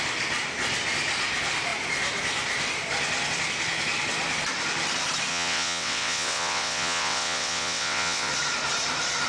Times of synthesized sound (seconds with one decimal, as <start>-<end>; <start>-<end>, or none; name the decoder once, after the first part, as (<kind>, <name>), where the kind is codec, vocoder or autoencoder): 5.3-8.3 (vocoder, WaveNeXt)